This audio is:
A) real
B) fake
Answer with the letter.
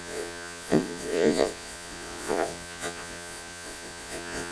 B